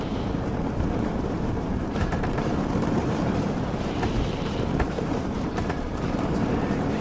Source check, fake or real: fake